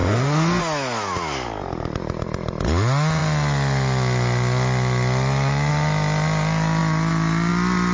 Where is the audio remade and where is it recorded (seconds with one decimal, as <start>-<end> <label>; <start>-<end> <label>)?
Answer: 0.0-0.6 remade; 0.6-7.9 recorded